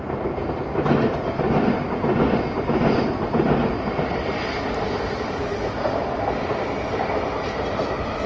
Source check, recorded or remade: recorded